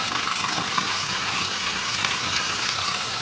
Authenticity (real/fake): fake